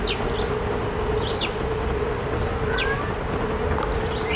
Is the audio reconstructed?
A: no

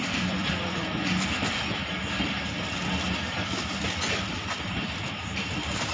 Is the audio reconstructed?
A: yes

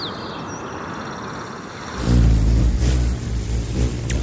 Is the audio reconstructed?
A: no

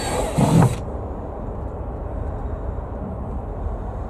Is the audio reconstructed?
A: yes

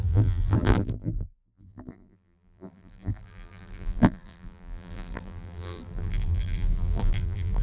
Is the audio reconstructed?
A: yes